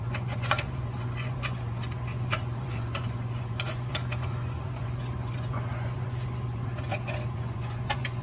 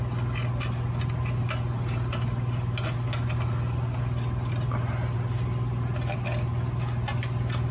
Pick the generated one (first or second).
first